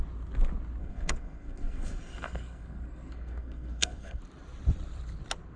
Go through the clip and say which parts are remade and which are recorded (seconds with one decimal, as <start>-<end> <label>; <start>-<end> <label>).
0.0-0.8 recorded; 0.8-4.2 remade; 4.2-5.6 recorded